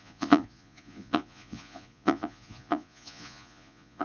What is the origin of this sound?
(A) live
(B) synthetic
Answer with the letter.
B